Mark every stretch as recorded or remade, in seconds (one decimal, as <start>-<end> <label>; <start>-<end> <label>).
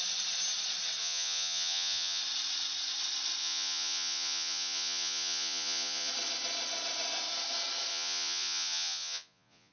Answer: 0.0-1.0 recorded; 1.0-2.2 remade; 2.2-3.4 recorded; 3.4-6.1 remade; 6.1-7.9 recorded; 7.9-9.7 remade